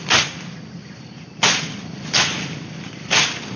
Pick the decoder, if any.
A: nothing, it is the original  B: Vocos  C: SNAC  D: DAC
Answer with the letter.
A